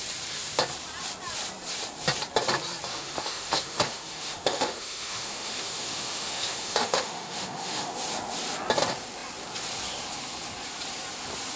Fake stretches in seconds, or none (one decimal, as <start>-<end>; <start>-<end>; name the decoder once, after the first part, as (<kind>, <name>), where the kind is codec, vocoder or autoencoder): 2.9-7.9 (autoencoder, DAC-VAE)